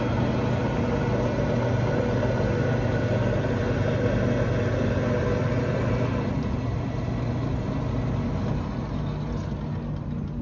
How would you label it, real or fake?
real